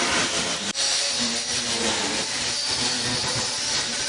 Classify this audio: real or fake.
fake